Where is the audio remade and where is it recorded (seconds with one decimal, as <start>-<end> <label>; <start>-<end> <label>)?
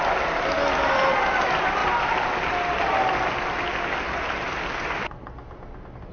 0.0-6.1 recorded